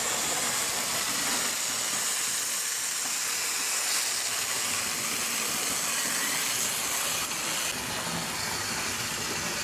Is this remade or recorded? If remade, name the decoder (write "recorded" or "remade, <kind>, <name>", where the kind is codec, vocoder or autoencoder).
recorded